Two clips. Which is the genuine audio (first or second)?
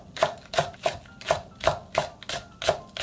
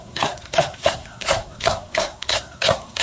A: first